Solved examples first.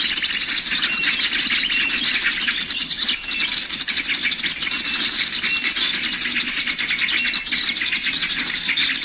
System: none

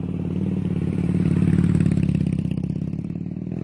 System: vocoder, BigVGAN v2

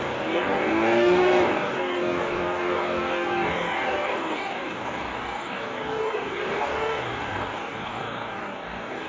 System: codec, DAC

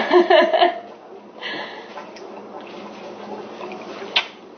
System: none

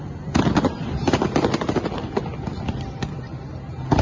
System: none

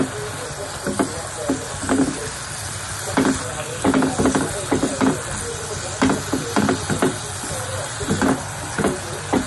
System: none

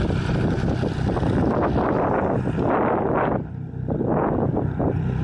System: none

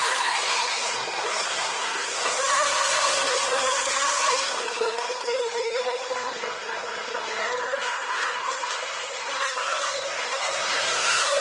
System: codec, SNAC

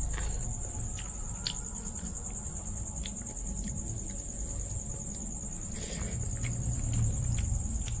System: none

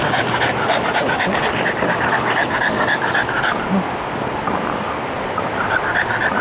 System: none